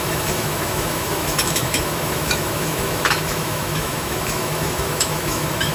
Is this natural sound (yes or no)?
no